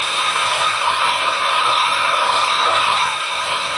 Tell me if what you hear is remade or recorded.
remade